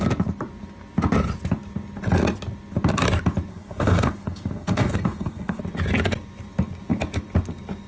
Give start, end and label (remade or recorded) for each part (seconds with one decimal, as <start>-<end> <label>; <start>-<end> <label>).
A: 0.0-3.5 recorded; 3.5-5.6 remade; 5.6-7.9 recorded